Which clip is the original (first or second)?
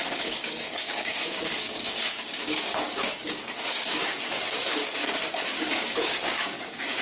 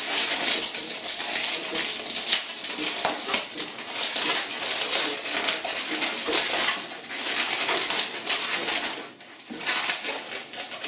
second